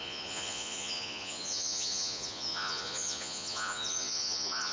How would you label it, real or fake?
fake